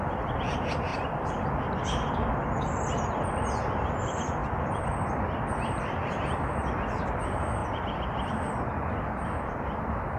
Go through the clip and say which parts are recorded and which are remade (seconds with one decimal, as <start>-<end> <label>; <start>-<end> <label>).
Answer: 0.0-10.2 recorded

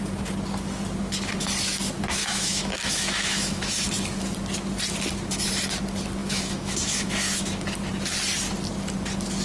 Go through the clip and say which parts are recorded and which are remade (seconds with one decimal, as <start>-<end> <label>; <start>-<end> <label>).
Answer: 0.0-2.2 recorded; 2.2-3.9 remade; 3.9-6.2 recorded; 6.2-7.4 remade; 7.4-9.4 recorded